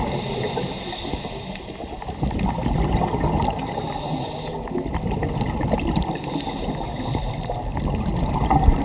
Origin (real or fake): real